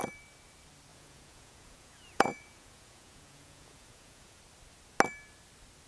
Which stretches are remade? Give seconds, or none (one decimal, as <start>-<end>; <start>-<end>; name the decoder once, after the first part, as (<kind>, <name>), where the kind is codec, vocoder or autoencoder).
0.9-4.4 (vocoder, Vocos)